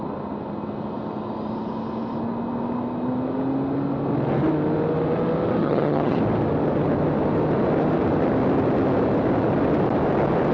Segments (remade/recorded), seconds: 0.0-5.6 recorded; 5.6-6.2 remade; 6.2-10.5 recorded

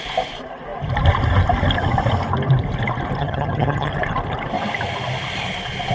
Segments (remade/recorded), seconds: 0.0-3.2 recorded; 3.2-3.9 remade; 3.9-5.9 recorded

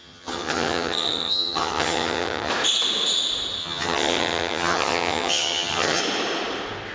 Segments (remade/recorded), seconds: 0.0-2.5 remade; 2.5-3.6 recorded; 3.6-6.0 remade; 6.0-6.9 recorded

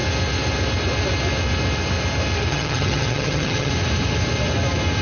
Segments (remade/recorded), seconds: 0.0-2.5 recorded; 2.5-3.7 remade; 3.7-5.0 recorded

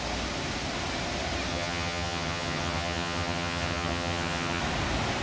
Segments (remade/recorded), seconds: 0.0-1.5 recorded; 1.5-4.6 remade; 4.6-5.2 recorded